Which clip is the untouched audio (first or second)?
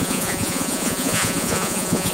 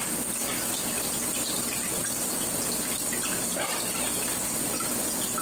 second